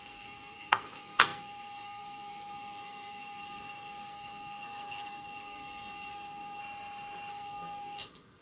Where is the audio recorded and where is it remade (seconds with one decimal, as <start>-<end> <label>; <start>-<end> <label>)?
0.0-6.6 remade; 6.6-7.3 recorded; 7.3-8.4 remade

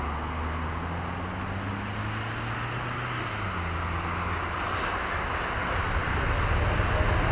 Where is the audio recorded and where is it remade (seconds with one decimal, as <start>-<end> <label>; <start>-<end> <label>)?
0.0-7.3 recorded

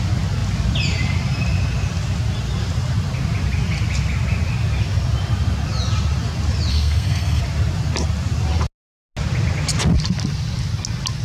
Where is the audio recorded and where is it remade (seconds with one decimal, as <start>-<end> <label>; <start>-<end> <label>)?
0.0-6.7 recorded; 6.7-7.4 remade; 7.4-11.2 recorded

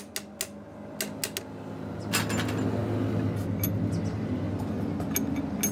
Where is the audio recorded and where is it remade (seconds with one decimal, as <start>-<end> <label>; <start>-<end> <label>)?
0.0-5.7 recorded

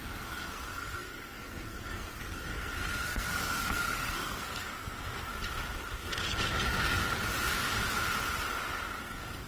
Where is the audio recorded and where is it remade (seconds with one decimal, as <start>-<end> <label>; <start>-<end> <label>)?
0.0-5.3 remade; 5.3-6.3 recorded; 6.3-7.0 remade; 7.0-9.0 recorded; 9.0-9.5 remade

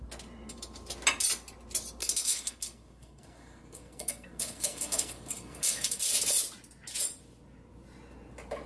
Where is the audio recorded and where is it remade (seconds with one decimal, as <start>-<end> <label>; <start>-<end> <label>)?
0.0-2.0 recorded; 2.0-6.0 remade; 6.0-8.7 recorded